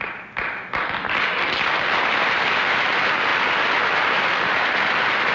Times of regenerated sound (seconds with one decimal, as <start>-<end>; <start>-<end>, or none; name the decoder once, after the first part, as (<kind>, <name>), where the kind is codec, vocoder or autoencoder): none